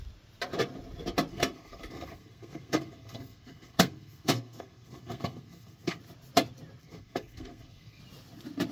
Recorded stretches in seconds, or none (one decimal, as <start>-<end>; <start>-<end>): 0.0-1.3; 6.0-6.8; 8.0-8.7